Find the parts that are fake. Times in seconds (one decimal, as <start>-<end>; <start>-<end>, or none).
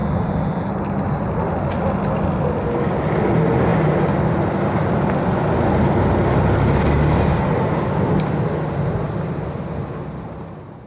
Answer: none